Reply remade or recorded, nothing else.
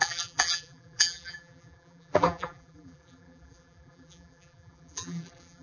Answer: remade